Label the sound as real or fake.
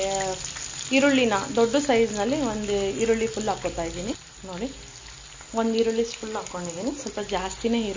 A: real